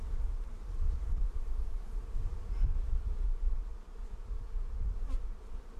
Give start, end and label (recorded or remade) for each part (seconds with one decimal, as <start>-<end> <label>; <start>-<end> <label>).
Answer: 0.0-3.7 remade; 3.7-5.0 recorded; 5.0-5.8 remade